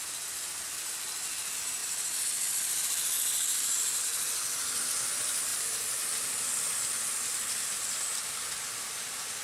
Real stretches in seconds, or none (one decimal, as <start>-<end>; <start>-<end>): 1.0-1.8; 4.0-5.5; 8.5-9.4